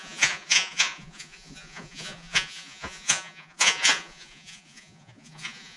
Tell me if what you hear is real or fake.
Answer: fake